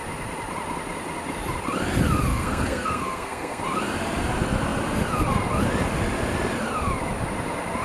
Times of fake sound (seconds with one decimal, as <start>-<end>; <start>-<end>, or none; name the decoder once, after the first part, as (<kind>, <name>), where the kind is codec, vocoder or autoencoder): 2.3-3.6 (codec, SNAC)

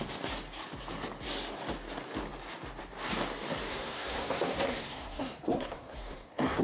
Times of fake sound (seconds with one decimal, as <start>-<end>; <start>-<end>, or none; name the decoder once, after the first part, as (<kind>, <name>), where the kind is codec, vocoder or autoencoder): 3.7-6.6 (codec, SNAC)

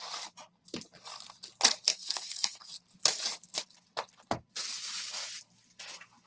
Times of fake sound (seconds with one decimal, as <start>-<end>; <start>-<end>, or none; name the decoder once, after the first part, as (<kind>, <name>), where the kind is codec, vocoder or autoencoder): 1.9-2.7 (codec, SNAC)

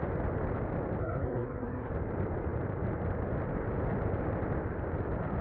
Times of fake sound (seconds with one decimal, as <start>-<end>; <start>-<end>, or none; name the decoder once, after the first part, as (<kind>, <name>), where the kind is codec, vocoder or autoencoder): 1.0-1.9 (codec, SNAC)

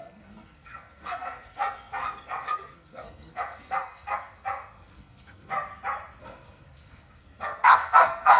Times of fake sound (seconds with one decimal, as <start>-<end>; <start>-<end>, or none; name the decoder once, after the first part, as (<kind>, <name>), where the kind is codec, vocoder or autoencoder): 0.0-5.5 (codec, SNAC); 6.2-8.4

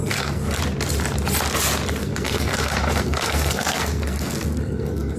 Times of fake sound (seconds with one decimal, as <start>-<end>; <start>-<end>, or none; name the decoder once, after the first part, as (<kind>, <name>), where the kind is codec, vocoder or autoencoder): 0.0-0.6 (codec, SNAC); 2.0-5.2

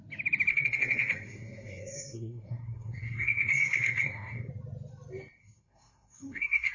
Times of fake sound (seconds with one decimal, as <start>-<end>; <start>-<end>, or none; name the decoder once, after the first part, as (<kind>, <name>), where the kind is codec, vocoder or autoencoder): 0.5-4.5 (codec, SNAC); 5.4-6.7